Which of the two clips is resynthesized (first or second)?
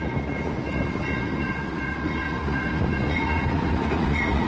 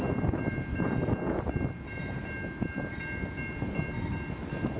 first